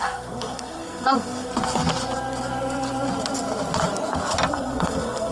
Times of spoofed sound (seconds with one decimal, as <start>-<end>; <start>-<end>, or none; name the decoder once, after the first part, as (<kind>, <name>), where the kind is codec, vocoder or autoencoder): 0.0-1.5 (codec, SNAC); 4.5-5.3